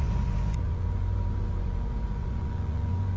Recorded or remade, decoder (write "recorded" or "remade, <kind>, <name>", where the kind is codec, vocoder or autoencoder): remade, vocoder, Vocos